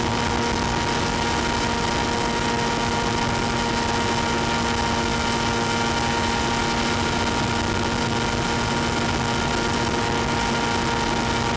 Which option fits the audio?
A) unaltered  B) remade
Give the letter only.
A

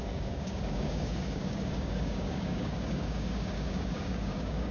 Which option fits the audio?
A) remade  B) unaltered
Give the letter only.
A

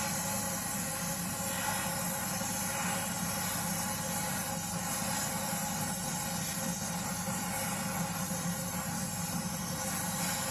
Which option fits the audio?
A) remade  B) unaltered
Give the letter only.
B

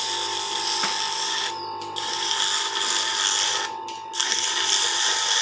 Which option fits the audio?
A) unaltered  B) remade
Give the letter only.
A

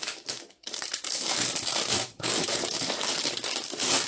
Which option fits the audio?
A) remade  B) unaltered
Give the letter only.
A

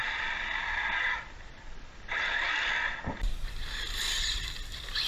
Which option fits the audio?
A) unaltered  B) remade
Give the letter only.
A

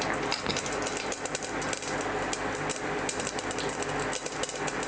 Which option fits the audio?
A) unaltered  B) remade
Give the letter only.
A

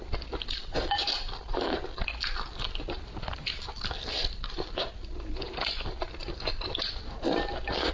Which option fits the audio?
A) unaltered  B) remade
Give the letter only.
A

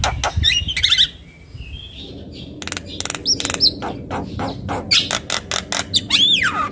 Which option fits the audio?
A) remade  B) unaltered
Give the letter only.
B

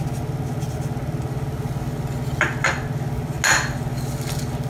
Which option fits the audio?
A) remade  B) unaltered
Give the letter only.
B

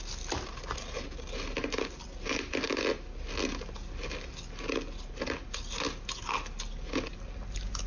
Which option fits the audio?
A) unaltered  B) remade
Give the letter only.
A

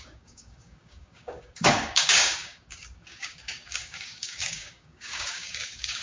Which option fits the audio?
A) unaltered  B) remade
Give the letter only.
B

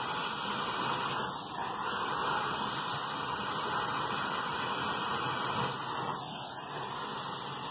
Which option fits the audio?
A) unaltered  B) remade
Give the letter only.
A